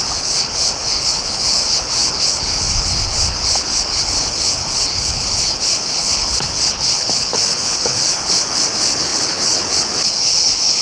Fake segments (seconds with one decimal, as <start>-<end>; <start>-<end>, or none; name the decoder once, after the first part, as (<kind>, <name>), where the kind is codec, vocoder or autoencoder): 0.0-10.8 (codec, HILCodec)